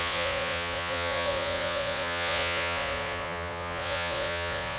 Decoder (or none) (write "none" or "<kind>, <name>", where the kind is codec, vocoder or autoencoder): vocoder, Vocos